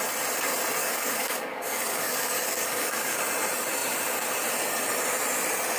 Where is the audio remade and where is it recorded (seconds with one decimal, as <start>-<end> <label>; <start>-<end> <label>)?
0.0-0.8 recorded; 0.8-3.2 remade; 3.2-5.8 recorded